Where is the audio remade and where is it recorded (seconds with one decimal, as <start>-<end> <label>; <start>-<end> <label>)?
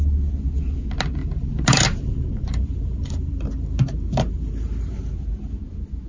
0.0-1.2 recorded; 1.2-4.9 remade; 4.9-6.1 recorded